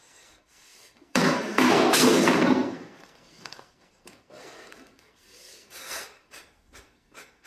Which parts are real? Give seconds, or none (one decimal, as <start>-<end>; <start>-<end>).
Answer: none